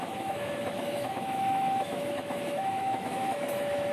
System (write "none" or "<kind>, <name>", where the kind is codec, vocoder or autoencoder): autoencoder, DAC-VAE